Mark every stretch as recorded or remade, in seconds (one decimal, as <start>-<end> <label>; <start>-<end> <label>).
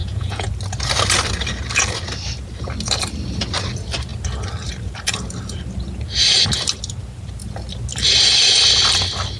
0.0-0.5 remade; 0.5-9.4 recorded